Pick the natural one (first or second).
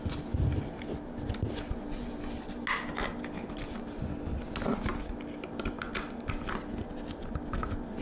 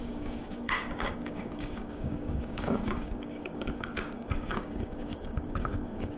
first